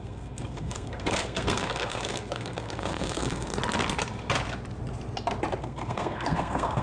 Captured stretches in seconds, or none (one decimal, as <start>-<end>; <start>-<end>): 3.5-5.6